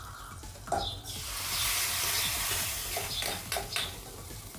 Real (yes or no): yes